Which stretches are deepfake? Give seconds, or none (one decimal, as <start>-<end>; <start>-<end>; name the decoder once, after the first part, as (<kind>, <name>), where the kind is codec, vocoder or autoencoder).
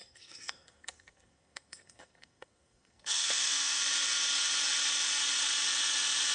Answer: 0.0-3.8 (codec, SNAC)